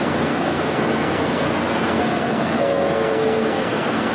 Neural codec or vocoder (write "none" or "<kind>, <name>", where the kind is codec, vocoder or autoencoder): codec, SNAC